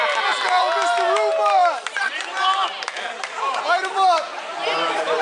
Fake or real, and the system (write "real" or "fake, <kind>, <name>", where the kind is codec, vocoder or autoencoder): real